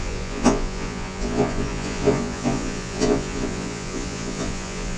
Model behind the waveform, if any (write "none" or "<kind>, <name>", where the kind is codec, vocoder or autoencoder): vocoder, Vocos